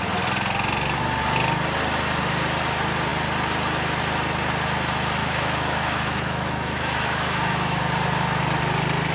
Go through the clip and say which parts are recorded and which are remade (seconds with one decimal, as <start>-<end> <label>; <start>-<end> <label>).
0.0-5.2 recorded; 5.2-7.8 remade; 7.8-9.1 recorded